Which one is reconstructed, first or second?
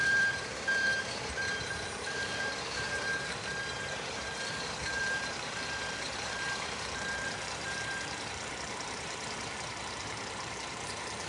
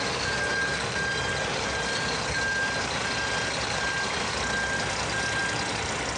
first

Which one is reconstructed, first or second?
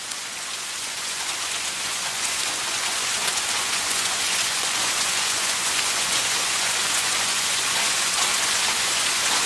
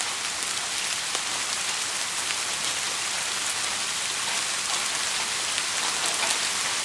first